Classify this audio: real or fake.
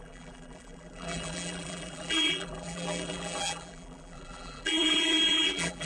fake